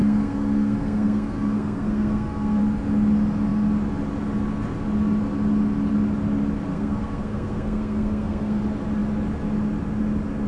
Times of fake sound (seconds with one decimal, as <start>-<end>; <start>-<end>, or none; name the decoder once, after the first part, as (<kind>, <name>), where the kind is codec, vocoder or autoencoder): 0.0-2.6 (codec, SNAC); 6.7-8.6